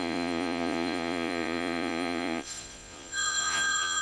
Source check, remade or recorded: remade